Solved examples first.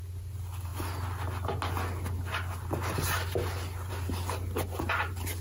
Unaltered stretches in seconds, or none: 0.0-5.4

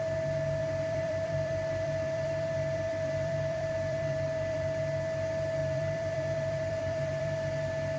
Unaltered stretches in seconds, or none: 0.0-0.6; 4.8-5.6; 7.5-8.0